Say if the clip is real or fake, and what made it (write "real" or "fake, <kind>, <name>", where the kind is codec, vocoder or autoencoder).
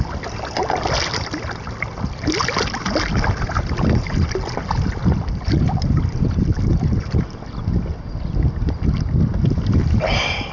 real